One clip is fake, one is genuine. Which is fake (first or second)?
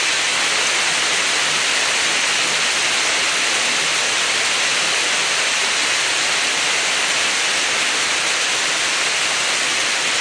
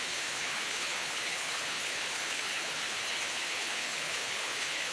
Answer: second